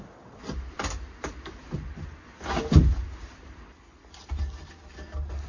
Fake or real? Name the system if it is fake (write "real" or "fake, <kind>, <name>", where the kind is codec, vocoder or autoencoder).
real